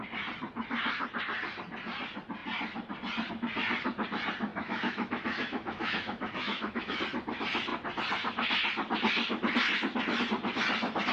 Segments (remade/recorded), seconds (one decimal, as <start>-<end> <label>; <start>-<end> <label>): 0.0-4.5 recorded; 4.5-7.0 remade; 7.0-11.1 recorded